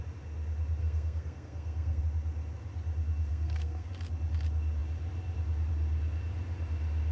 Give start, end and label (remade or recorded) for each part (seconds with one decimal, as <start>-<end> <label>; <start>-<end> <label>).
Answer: 0.0-0.8 recorded; 0.8-2.0 remade; 2.0-3.3 recorded; 3.3-3.9 remade; 3.9-7.1 recorded